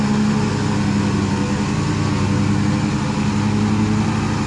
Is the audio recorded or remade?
recorded